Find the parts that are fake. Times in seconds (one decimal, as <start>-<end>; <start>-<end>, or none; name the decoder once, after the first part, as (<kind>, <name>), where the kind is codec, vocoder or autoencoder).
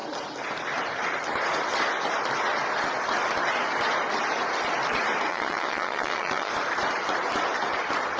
5.3-6.5 (vocoder, Vocos)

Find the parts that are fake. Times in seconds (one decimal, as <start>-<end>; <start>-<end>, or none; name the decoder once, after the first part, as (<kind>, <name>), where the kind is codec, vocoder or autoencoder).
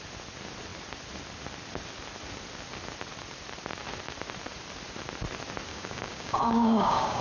5.7-7.2 (codec, DAC)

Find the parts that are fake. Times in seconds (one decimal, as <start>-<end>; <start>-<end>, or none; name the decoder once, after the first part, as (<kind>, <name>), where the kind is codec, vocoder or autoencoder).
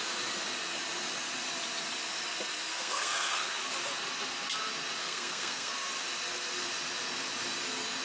2.7-3.5 (codec, SNAC); 5.0-5.7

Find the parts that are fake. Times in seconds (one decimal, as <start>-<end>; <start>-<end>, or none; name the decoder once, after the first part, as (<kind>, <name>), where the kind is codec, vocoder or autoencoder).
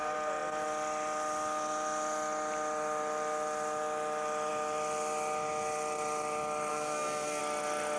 6.7-7.4 (codec, SNAC)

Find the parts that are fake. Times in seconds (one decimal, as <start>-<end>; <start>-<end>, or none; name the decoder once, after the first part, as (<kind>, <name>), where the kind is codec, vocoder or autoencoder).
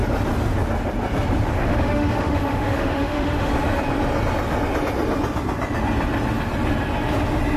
1.5-3.5 (autoencoder, DAC-VAE)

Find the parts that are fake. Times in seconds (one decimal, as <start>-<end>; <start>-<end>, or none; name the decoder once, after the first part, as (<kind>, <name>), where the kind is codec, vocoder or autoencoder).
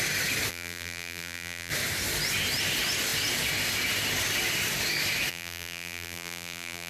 0.5-1.7 (vocoder, BigVGAN v2); 5.3-6.9